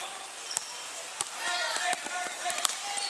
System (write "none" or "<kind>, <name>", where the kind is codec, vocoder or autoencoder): none